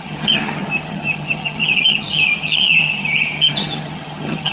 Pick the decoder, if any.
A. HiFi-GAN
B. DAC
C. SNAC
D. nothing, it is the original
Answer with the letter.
A